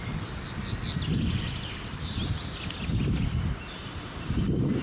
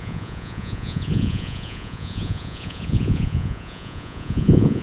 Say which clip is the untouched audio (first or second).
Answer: first